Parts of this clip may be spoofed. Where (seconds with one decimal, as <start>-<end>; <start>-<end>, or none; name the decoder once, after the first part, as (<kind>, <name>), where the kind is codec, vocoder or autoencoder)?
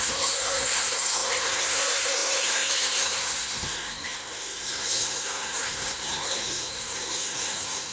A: 0.0-7.9 (codec, SNAC)